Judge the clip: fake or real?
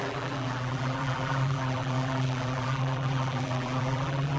fake